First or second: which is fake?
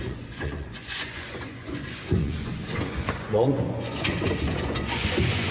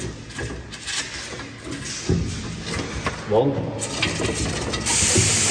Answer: first